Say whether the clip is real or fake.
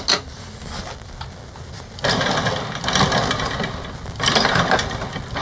real